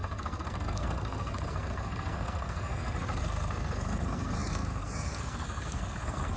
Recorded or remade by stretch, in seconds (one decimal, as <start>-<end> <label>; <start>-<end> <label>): 0.0-6.4 remade